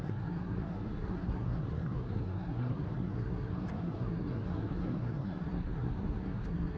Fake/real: fake